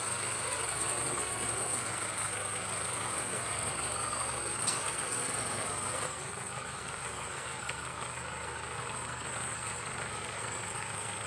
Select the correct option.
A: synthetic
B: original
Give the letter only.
A